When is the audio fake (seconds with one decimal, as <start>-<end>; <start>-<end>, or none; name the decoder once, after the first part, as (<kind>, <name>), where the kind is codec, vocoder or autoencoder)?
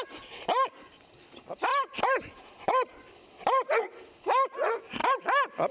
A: none